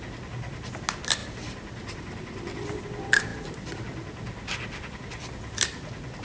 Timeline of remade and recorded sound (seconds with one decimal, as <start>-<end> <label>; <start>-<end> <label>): 0.0-1.2 recorded; 1.2-2.8 remade; 2.8-6.2 recorded